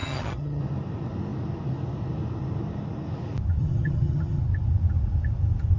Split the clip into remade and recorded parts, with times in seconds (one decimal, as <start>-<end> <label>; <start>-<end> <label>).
0.0-0.6 remade; 0.6-3.6 recorded; 3.6-4.4 remade; 4.4-5.8 recorded